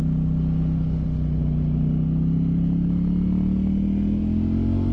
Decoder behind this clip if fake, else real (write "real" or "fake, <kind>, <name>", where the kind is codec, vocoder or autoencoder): real